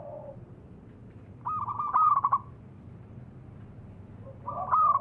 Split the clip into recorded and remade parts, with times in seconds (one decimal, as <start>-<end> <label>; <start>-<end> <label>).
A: 0.0-1.0 recorded; 1.0-2.3 remade; 2.3-5.0 recorded